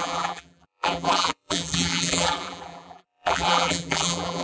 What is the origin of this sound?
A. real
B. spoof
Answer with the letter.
B